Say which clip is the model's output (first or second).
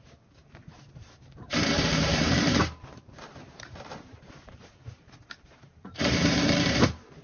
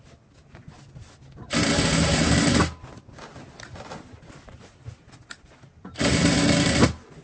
first